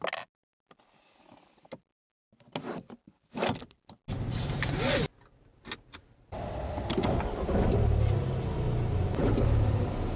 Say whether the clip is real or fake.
real